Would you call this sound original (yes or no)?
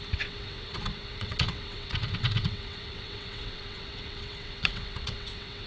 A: no